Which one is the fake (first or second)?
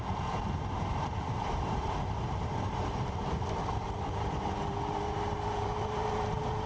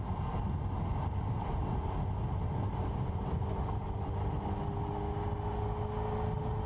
first